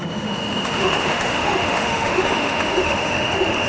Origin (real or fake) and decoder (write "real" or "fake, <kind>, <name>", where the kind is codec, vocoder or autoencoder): fake, autoencoder, DAC-VAE